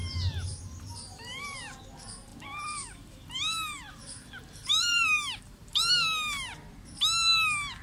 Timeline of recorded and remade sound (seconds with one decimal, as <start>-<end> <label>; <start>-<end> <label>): 0.0-1.8 remade; 1.8-2.3 recorded; 2.3-5.9 remade; 5.9-7.8 recorded